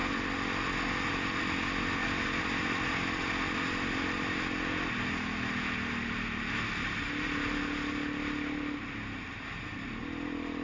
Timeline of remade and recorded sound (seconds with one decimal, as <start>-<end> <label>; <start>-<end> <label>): 0.0-10.6 recorded